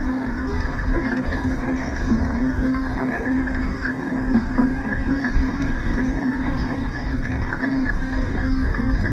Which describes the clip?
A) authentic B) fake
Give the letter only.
B